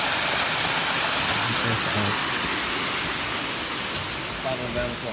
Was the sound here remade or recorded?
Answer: recorded